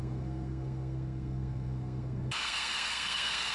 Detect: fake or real fake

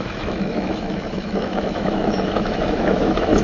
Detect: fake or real fake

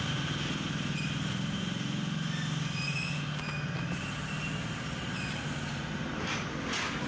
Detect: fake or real real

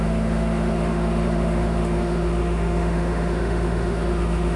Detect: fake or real fake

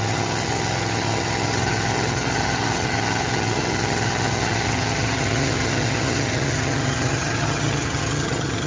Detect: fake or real fake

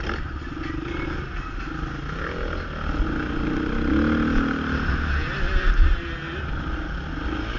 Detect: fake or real real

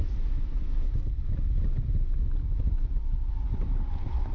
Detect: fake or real real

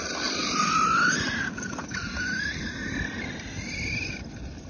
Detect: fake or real real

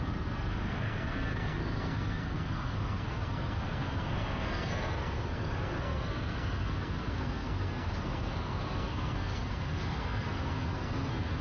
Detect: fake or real fake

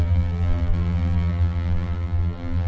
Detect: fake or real fake